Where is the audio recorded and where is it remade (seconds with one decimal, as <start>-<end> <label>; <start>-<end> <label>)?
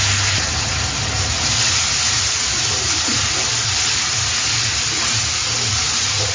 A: 0.0-6.3 recorded